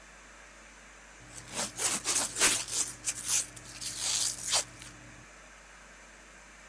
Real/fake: real